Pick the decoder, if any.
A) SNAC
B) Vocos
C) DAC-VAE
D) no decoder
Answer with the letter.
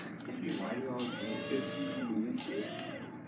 D